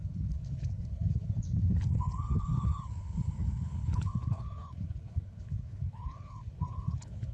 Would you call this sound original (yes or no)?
no